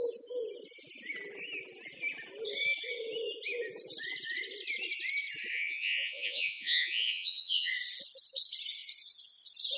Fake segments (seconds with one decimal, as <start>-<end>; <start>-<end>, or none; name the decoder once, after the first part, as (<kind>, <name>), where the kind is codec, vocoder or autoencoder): 5.5-7.7 (vocoder, Vocos)